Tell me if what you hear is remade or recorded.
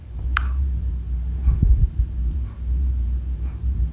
remade